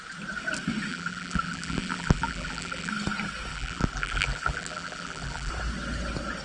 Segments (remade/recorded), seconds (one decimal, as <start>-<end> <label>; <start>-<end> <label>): 0.0-0.9 recorded; 0.9-2.9 remade; 2.9-3.5 recorded; 3.5-5.5 remade; 5.5-6.4 recorded